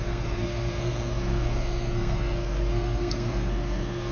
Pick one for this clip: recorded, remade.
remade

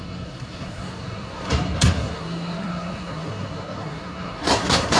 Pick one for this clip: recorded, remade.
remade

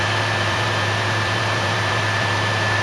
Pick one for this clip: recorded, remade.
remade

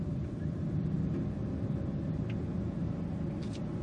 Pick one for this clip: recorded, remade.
recorded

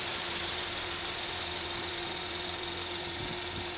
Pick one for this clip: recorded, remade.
remade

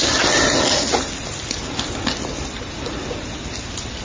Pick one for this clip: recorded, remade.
recorded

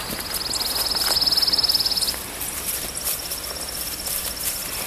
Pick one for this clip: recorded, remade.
recorded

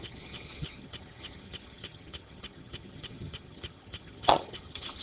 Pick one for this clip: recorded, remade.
remade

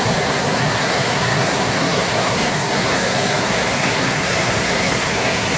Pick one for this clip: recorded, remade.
remade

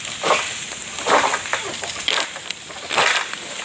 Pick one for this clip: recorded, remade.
recorded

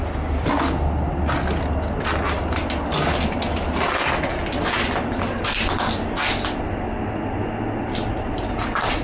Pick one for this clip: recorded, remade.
recorded